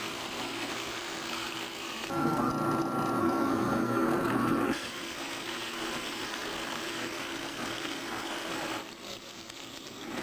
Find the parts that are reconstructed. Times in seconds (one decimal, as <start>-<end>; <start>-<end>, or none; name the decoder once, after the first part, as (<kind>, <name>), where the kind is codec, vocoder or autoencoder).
0.0-2.5 (codec, SNAC); 3.2-10.2